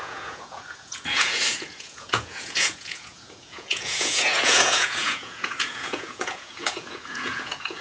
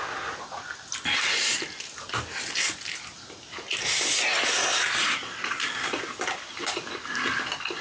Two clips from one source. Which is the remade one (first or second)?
first